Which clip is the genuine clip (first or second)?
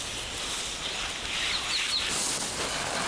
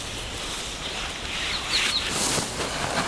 first